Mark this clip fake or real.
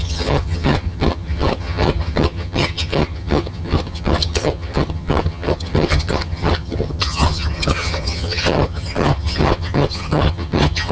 fake